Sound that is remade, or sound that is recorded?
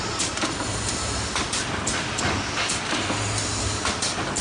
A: recorded